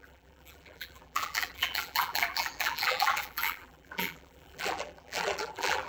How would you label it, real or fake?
fake